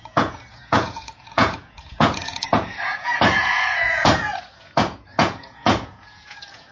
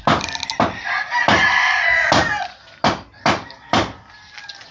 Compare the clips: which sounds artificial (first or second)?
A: first